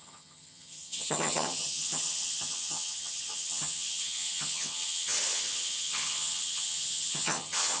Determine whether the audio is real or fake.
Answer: fake